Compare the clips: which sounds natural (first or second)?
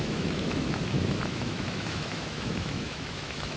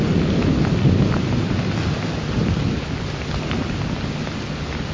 second